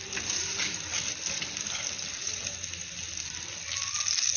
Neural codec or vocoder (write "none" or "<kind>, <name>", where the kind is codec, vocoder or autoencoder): none